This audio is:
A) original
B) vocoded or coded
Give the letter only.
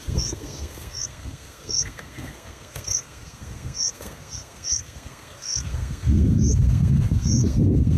B